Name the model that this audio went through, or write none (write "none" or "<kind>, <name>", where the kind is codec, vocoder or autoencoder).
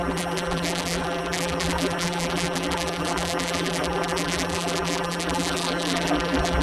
vocoder, BigVGAN v2